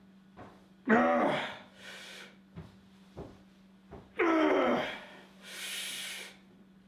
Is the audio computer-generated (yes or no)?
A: no